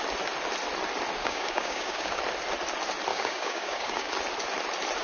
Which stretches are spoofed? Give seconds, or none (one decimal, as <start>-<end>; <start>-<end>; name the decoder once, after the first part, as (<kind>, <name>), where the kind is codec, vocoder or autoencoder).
1.2-2.2 (codec, DAC); 3.1-4.1